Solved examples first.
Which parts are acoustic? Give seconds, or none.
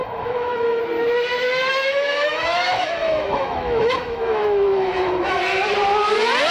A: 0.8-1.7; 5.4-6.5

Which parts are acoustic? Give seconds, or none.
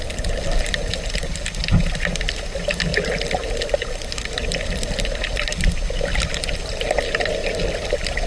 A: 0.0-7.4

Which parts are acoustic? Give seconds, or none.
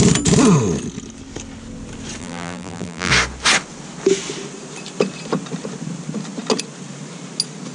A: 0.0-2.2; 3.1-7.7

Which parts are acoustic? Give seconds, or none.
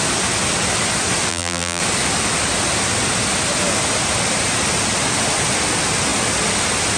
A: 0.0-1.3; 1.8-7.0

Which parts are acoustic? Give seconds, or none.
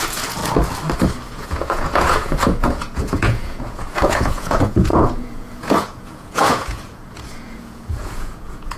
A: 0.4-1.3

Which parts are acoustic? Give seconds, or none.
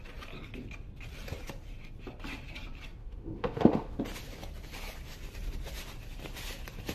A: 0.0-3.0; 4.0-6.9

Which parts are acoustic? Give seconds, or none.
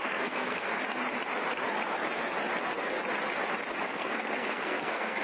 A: 0.7-3.8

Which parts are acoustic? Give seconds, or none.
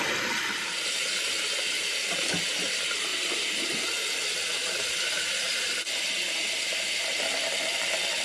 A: 0.0-8.2